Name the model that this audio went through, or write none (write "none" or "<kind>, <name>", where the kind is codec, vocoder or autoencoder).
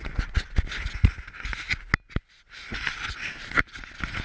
none